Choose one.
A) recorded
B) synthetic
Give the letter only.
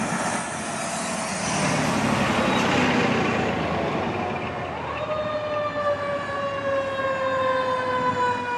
A